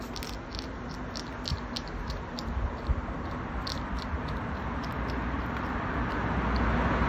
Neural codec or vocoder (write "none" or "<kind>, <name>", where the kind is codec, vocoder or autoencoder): none